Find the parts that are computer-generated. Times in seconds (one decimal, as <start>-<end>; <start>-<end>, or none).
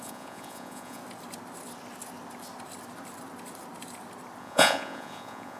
0.0-1.0; 4.4-5.6